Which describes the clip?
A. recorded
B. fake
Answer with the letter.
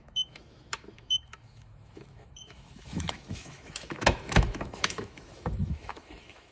B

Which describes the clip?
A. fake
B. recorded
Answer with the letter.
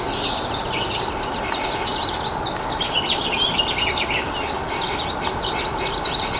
B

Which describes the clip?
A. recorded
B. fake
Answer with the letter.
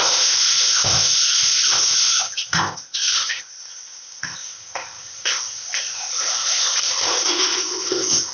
B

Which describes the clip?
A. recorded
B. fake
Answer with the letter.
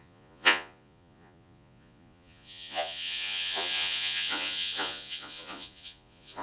B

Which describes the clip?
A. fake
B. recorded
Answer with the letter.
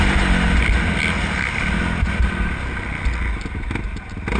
B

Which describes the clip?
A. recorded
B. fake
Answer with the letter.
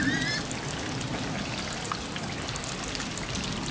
A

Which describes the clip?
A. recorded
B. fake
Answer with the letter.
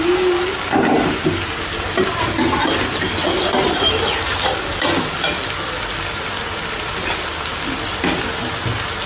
A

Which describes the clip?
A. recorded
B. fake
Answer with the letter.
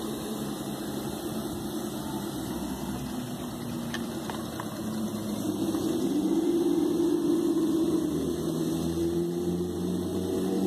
A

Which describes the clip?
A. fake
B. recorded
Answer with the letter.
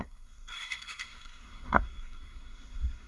A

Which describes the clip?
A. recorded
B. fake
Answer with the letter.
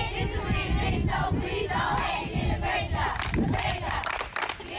A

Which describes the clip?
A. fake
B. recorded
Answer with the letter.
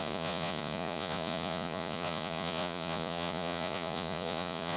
A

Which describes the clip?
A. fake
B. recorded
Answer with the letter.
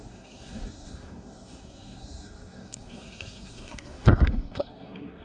A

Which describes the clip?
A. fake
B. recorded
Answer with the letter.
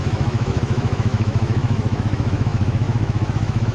A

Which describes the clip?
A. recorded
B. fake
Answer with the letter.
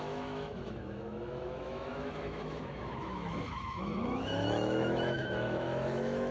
B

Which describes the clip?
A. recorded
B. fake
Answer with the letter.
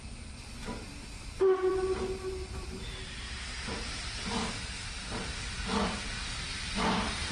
A